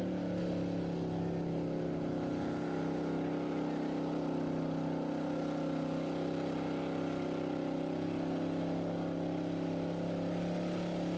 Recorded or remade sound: recorded